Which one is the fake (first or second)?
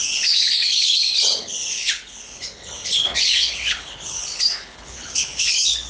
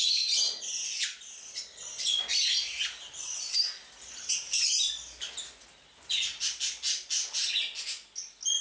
first